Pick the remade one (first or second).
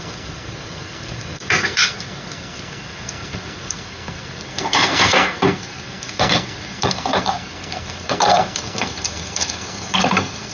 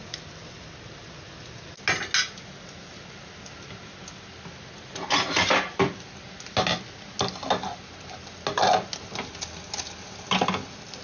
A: first